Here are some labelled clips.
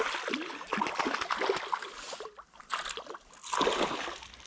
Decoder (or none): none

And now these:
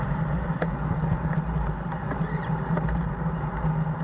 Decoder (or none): vocoder, BigVGAN v2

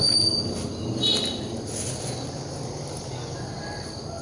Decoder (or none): none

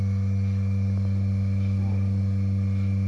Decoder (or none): none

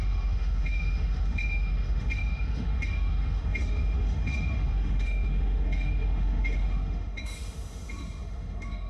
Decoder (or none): autoencoder, DAC-VAE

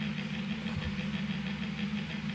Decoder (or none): none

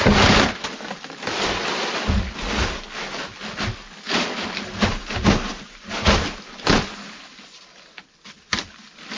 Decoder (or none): none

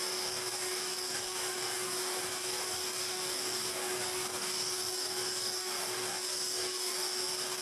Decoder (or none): codec, DAC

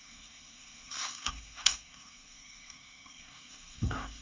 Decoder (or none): codec, SNAC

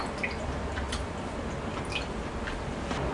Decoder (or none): none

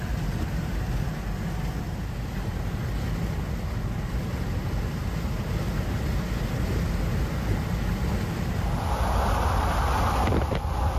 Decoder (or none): none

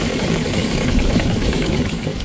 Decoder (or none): codec, DAC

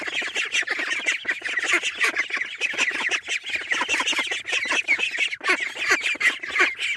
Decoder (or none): none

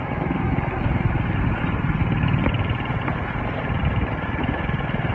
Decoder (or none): none